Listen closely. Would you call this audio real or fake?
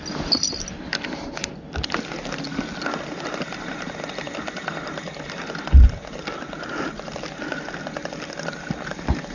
real